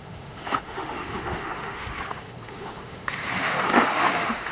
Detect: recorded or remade remade